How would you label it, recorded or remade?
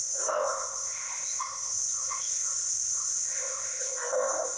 remade